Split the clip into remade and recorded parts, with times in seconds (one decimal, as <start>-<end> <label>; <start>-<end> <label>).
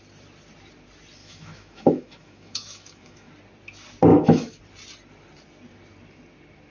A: 0.0-1.2 recorded; 1.2-3.3 remade; 3.3-4.1 recorded; 4.1-4.6 remade; 4.6-6.7 recorded